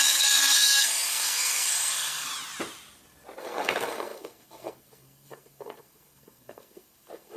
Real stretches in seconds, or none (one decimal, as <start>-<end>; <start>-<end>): 2.3-3.4